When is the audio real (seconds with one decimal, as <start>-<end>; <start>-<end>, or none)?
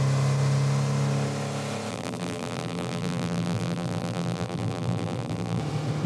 0.0-1.9; 5.6-6.1